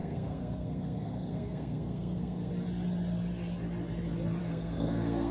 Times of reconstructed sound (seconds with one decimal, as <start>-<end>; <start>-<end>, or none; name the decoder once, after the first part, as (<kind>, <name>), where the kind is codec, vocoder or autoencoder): 0.0-2.5 (codec, SNAC); 4.4-5.3